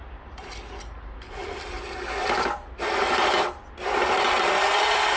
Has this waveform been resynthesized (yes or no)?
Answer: no